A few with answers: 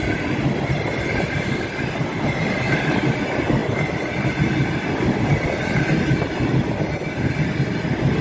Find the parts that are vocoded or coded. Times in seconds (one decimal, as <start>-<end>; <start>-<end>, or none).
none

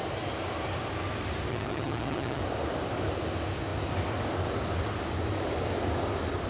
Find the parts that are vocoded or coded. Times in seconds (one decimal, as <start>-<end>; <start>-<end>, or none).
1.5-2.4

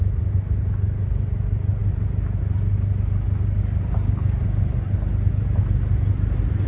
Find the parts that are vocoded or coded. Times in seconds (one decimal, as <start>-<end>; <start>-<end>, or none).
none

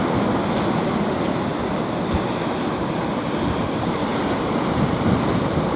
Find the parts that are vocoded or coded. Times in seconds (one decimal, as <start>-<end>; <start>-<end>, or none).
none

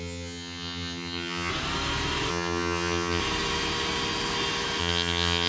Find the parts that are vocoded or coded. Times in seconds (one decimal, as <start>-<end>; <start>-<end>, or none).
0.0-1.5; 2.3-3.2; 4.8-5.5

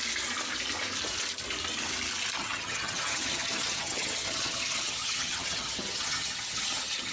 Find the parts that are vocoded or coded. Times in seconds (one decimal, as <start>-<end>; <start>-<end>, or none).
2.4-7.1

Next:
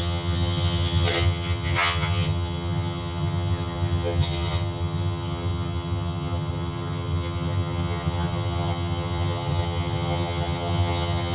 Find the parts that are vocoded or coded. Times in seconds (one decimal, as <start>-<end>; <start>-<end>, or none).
0.0-11.3